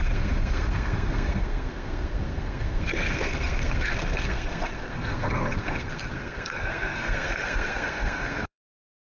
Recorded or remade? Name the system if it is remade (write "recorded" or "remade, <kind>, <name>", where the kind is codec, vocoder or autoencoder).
remade, codec, SNAC